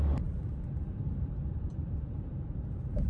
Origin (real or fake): fake